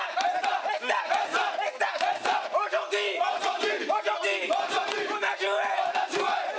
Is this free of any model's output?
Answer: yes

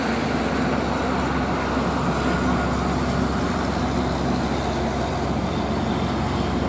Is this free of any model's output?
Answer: yes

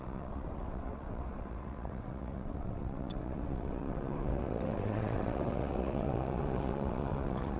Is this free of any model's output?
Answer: no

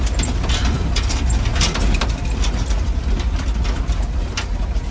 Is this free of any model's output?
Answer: yes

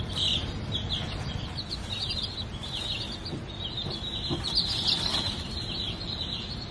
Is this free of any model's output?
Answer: yes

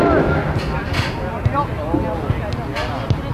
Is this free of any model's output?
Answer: yes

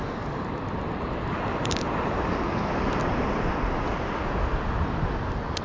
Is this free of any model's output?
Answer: yes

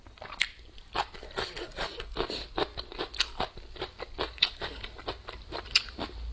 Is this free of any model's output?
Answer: yes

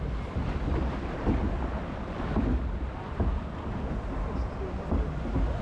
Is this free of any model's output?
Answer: yes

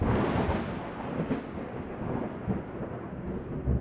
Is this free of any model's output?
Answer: yes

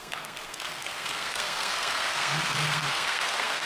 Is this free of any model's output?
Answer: no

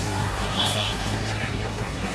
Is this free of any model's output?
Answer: no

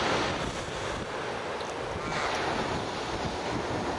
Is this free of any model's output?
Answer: yes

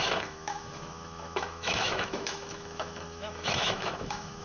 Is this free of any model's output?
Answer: no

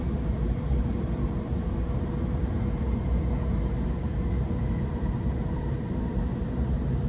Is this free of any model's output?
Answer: no